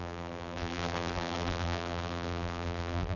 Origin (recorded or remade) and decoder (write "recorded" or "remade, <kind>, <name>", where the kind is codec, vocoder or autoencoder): remade, vocoder, BigVGAN v2